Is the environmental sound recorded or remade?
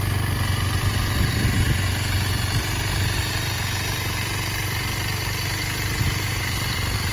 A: recorded